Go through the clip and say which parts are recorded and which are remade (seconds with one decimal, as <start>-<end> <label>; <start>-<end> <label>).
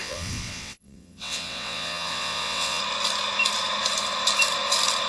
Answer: 0.0-2.8 remade; 2.8-5.1 recorded